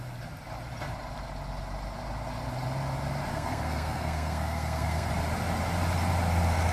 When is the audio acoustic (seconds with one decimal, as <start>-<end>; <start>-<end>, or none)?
0.0-3.3; 5.1-6.7